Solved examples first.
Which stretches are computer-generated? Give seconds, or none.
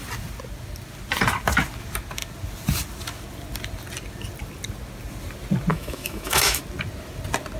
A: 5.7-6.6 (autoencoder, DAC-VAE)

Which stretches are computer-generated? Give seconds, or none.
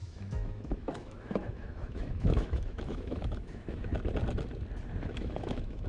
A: 0.0-3.9 (autoencoder, DAC-VAE); 5.0-5.9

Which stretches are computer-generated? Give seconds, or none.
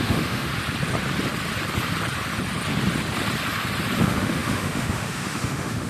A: 0.0-0.5 (autoencoder, DAC-VAE); 4.0-5.9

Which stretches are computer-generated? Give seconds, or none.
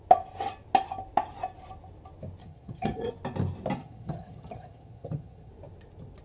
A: 2.4-3.1 (vocoder, HiFi-GAN); 3.8-5.5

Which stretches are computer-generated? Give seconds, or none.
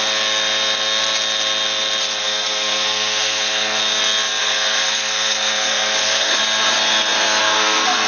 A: 2.2-3.8 (codec, SNAC); 4.4-6.4; 7.4-8.1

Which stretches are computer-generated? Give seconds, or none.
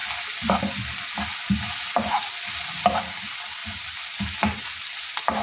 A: 3.6-4.5 (vocoder, BigVGAN v2)